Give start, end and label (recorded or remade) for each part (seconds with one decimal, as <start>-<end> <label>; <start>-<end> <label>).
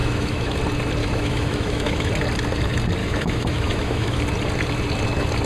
0.0-0.6 remade; 0.6-1.0 recorded; 1.0-2.1 remade; 2.1-3.0 recorded; 3.0-4.2 remade; 4.2-5.5 recorded